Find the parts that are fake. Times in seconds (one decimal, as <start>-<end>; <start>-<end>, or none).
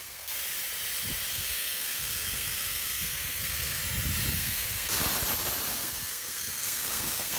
0.0-0.4; 1.3-3.8; 4.3-5.0; 5.7-7.4